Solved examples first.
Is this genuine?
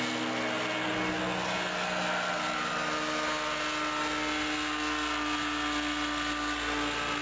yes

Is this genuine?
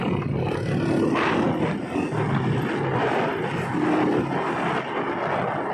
yes